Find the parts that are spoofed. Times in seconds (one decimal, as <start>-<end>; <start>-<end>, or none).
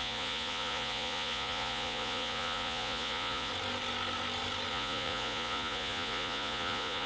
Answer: 0.0-3.5; 4.7-7.1